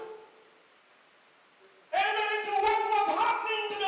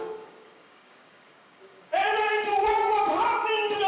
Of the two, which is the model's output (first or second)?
second